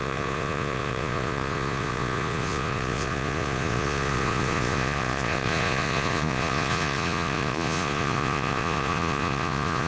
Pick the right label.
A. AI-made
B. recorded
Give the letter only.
A